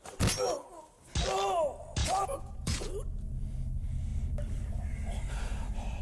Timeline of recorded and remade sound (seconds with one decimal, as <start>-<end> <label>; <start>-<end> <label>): 0.0-2.0 recorded; 2.0-2.9 remade; 2.9-6.0 recorded